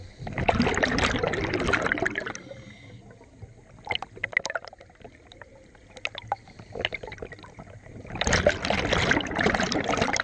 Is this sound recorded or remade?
recorded